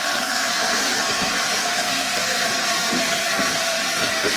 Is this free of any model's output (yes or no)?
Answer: no